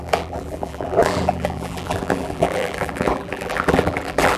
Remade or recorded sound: remade